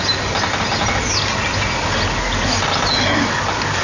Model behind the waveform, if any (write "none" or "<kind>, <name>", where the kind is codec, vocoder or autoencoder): none